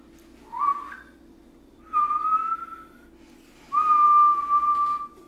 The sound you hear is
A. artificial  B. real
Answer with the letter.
B